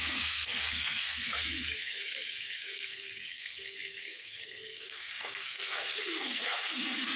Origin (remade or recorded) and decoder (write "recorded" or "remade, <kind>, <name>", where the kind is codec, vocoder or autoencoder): remade, codec, SNAC